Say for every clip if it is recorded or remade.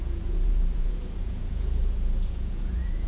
remade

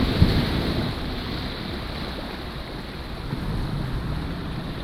recorded